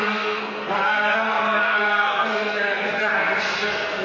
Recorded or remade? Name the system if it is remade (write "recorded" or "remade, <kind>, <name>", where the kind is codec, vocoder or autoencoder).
remade, codec, SNAC